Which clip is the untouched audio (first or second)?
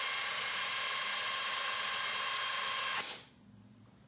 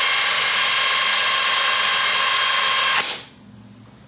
second